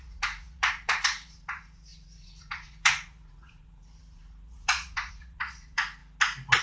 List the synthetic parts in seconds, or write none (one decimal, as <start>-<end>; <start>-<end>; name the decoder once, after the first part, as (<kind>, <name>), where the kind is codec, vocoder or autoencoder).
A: 0.0-6.0 (vocoder, Vocos)